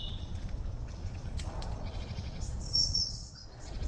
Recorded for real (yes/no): no